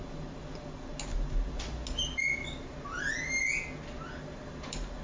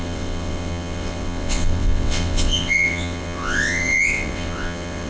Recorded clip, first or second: first